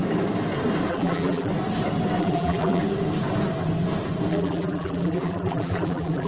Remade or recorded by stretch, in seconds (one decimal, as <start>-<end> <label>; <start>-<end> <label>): 0.0-0.9 recorded; 0.9-1.5 remade; 1.5-2.2 recorded; 2.2-2.8 remade; 2.8-4.3 recorded; 4.3-6.3 remade